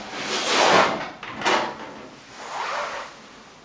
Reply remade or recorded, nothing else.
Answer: recorded